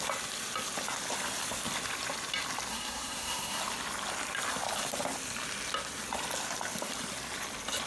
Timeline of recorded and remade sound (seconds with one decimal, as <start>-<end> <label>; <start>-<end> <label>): 0.0-2.7 recorded; 2.7-3.6 remade; 3.6-7.9 recorded